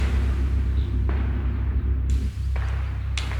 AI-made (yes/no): no